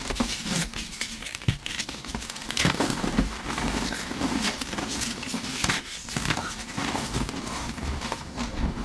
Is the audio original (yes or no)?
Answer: no